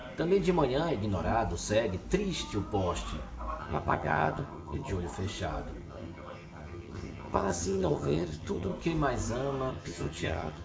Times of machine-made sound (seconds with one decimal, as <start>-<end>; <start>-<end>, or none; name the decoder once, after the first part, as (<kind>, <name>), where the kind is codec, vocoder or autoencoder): 3.6-4.9 (vocoder, HiFi-GAN); 5.8-8.7; 9.7-10.6